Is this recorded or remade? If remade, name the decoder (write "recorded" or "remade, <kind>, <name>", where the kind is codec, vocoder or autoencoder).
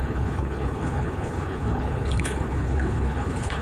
remade, codec, HILCodec